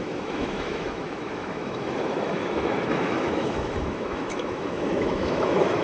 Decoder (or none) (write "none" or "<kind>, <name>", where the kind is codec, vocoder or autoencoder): autoencoder, DAC-VAE